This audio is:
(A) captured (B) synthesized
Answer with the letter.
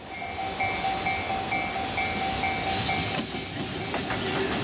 A